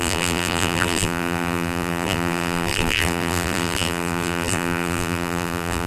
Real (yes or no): no